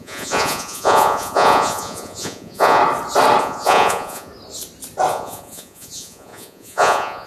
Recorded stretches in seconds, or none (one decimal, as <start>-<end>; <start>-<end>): 2.8-3.4; 4.3-5.1